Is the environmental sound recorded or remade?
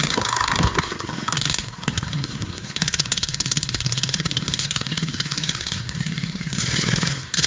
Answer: remade